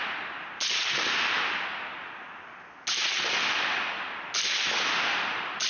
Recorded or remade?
recorded